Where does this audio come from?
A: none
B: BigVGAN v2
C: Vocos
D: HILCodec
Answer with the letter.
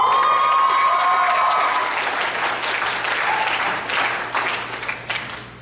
A